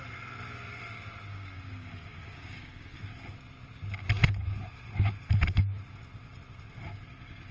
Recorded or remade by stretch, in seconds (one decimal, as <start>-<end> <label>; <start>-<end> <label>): 0.0-1.3 recorded; 1.3-3.0 remade; 3.0-7.5 recorded